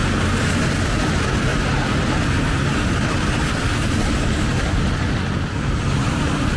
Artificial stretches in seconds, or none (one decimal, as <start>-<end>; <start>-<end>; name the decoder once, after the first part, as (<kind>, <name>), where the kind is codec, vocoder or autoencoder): none